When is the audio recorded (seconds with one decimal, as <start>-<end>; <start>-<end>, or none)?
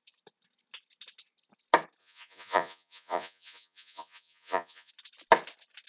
0.0-2.0; 4.9-5.9